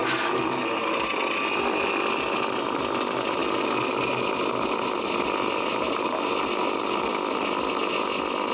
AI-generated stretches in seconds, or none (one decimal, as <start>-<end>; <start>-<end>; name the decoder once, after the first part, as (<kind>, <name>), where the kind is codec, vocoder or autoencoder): 0.0-0.6 (vocoder, BigVGAN v2)